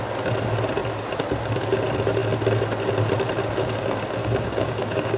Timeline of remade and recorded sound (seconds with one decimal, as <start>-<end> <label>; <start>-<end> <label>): 0.0-4.2 recorded; 4.2-5.2 remade